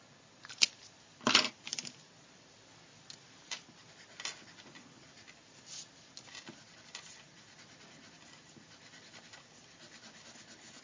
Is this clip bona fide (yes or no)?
yes